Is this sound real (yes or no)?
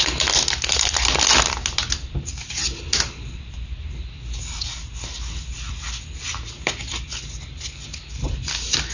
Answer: yes